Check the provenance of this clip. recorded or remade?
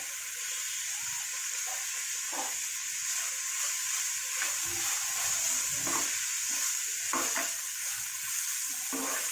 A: recorded